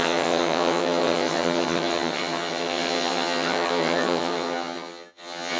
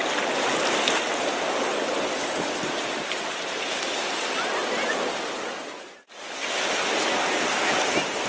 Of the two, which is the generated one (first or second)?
first